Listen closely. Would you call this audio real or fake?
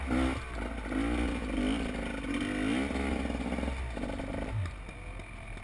real